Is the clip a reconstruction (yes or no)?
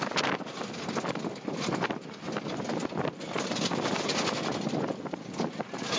no